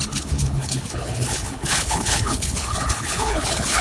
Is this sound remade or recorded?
remade